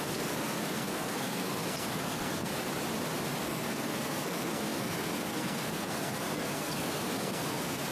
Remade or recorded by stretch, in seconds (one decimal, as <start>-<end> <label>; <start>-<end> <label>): 0.0-2.5 remade; 2.5-3.4 recorded; 3.4-7.9 remade